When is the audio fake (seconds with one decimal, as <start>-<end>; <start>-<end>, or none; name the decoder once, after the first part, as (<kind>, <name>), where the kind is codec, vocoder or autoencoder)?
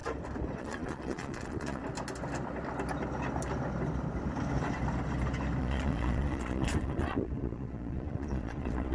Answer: 0.6-1.8 (vocoder, Vocos); 5.6-8.9